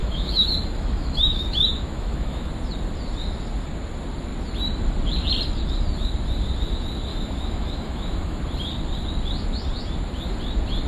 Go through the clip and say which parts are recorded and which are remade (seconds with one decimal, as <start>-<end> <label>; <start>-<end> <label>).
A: 0.0-2.5 remade; 2.5-7.1 recorded; 7.1-8.4 remade; 8.4-10.9 recorded